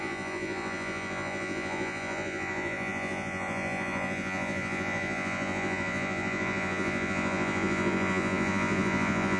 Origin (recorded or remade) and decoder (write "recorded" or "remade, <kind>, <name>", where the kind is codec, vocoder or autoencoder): remade, vocoder, Vocos